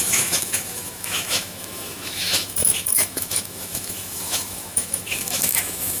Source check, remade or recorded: remade